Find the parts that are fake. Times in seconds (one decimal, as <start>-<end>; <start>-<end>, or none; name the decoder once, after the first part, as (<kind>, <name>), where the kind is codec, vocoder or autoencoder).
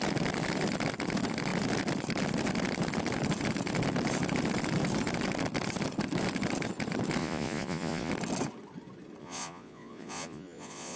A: 7.2-8.1 (vocoder, Vocos); 9.2-11.0